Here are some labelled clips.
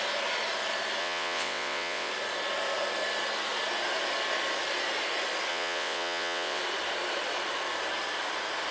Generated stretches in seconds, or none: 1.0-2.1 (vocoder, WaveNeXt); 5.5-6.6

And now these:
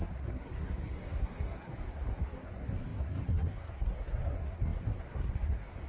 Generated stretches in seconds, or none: 0.0-1.7 (codec, SNAC); 2.2-5.9

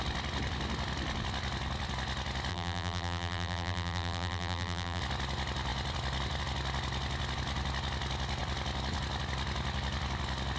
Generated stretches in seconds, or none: 2.5-5.0 (vocoder, BigVGAN v2)

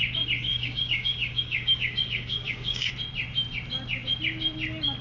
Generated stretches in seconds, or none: 0.5-2.9 (codec, DAC)

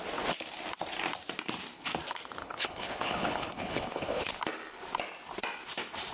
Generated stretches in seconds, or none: 2.4-4.2 (codec, HILCodec)